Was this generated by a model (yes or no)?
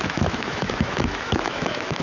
yes